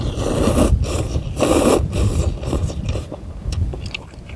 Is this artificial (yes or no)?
yes